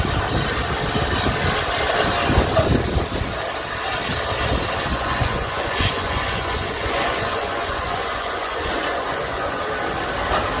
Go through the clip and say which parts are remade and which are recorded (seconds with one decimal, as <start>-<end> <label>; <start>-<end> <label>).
0.0-4.9 recorded; 4.9-9.6 remade; 9.6-10.6 recorded